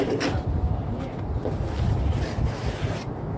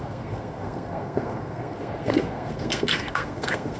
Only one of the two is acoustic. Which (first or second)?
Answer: first